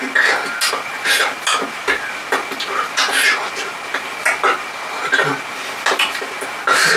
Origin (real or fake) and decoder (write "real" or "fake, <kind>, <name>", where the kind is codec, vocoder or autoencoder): real